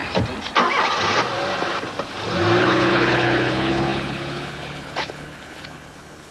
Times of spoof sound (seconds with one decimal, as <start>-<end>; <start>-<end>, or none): 2.6-6.3